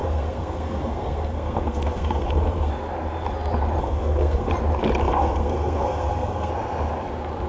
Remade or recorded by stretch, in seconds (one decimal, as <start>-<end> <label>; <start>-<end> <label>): 0.0-2.7 remade; 2.7-3.8 recorded; 3.8-4.5 remade; 4.5-5.0 recorded; 5.0-6.5 remade; 6.5-7.5 recorded